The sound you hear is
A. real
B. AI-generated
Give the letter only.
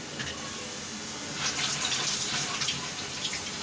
A